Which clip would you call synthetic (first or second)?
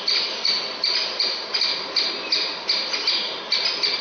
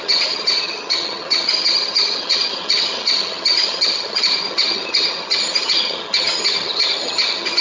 second